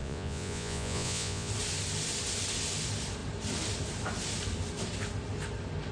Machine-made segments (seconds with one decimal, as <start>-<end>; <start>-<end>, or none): 0.0-1.5